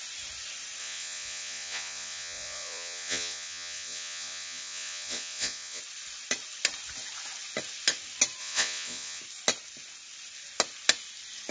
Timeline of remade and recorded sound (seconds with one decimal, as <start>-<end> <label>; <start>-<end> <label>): 0.0-0.8 recorded; 0.8-5.8 remade; 5.8-8.4 recorded; 8.4-9.2 remade; 9.2-11.5 recorded